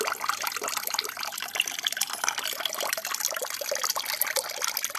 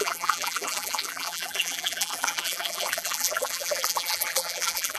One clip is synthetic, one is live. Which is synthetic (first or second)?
second